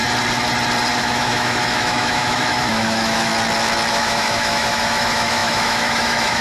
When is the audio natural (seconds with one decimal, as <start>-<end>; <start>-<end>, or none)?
0.0-1.0; 3.3-3.9